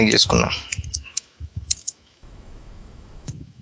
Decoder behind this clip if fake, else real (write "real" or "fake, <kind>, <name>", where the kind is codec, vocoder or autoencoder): fake, autoencoder, DAC-VAE